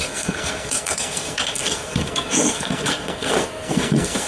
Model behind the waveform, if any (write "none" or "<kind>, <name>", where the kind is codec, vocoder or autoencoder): codec, SNAC